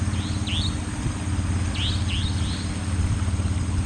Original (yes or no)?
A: yes